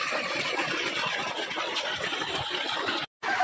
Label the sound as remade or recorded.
recorded